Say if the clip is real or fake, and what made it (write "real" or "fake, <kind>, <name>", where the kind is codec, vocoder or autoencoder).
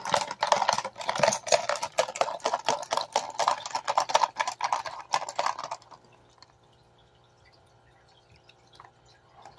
real